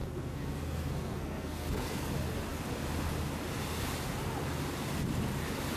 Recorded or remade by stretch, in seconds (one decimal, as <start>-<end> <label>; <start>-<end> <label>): 0.0-2.1 remade; 2.1-5.8 recorded